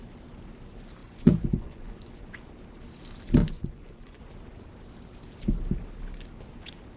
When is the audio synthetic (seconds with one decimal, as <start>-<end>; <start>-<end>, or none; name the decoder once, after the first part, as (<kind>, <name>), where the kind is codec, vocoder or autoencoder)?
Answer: 1.0-2.1 (vocoder, Vocos); 3.4-4.2